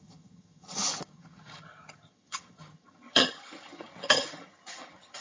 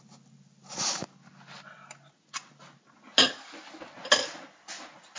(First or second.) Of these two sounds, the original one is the second